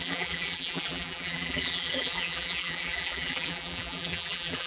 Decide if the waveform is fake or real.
fake